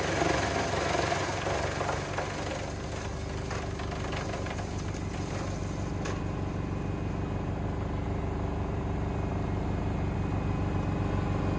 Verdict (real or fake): real